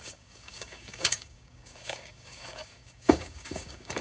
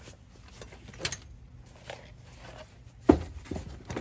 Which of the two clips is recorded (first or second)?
second